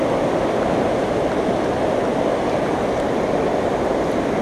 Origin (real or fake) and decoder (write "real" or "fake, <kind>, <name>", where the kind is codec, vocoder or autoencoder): real